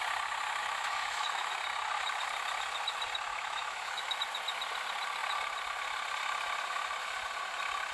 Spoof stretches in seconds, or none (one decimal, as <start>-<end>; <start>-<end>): 0.6-1.5; 3.3-4.2